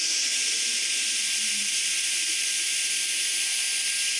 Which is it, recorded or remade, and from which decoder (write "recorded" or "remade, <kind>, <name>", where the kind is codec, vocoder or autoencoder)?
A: recorded